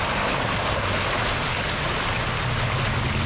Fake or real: real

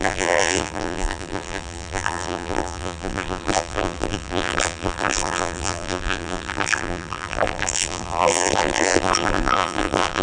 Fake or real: fake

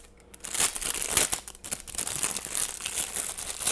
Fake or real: real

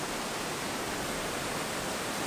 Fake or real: real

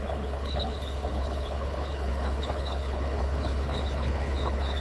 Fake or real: fake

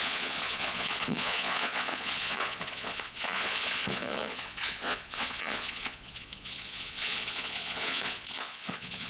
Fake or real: fake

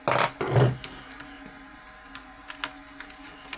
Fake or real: real